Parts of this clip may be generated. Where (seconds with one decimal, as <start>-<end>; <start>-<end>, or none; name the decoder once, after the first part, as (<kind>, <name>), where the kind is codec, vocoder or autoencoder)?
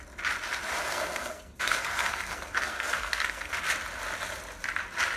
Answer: 0.8-3.5 (codec, SNAC)